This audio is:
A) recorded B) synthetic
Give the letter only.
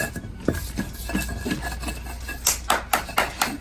A